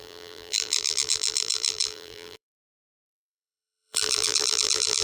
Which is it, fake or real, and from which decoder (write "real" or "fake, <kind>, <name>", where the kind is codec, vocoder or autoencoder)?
fake, vocoder, BigVGAN v2